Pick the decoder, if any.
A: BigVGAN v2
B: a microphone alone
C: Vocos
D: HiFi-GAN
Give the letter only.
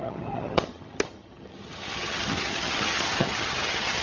D